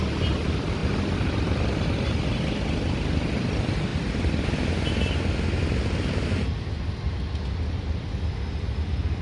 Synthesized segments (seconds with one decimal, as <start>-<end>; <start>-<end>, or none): none